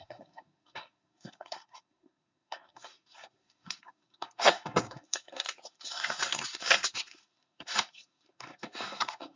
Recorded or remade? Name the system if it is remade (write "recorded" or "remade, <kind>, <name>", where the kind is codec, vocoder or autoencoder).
remade, codec, SNAC